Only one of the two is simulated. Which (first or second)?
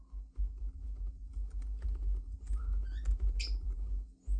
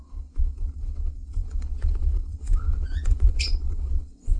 second